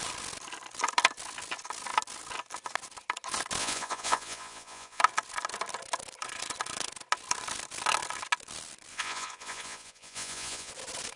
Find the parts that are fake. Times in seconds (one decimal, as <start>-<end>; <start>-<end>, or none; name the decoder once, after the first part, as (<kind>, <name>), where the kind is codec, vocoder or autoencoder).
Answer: 3.6-5.0 (vocoder, Vocos); 8.9-10.7